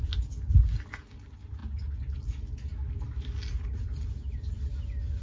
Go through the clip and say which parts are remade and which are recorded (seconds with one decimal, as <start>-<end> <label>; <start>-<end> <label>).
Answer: 0.0-5.2 recorded